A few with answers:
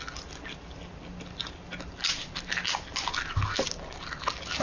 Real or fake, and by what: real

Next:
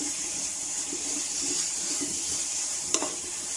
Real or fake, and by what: fake, vocoder, BigVGAN v2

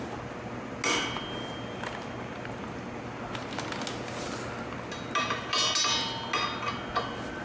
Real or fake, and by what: real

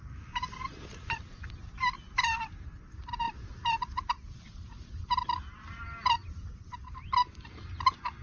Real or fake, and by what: real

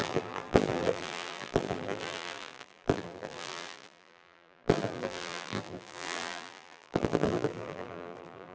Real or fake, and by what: fake, vocoder, BigVGAN v2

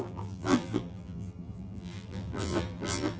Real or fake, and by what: fake, vocoder, BigVGAN v2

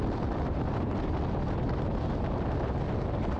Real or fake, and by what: real